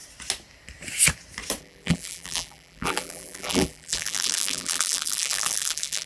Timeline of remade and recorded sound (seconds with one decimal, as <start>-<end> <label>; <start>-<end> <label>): 0.0-1.6 recorded; 1.6-6.1 remade